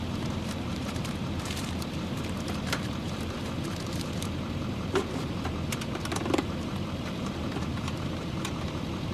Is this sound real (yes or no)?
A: no